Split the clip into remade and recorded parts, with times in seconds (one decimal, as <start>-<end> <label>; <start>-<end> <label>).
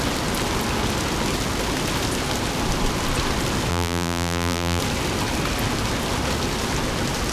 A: 0.0-3.7 recorded; 3.7-4.8 remade; 4.8-7.3 recorded